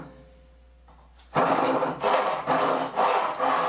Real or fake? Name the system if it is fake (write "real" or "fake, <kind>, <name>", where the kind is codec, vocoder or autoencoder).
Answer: real